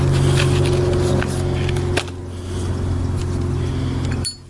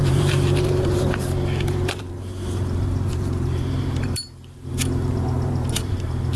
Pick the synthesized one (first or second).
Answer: second